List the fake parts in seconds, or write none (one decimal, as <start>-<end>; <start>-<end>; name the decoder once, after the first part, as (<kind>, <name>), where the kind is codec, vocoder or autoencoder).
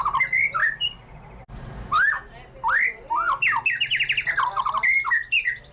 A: none